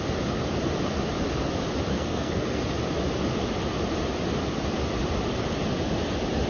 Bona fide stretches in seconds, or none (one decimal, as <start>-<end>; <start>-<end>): 0.0-1.9; 2.6-6.5